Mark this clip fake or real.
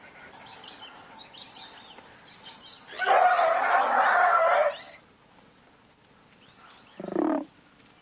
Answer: real